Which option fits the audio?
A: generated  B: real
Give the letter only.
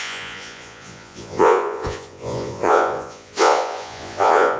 A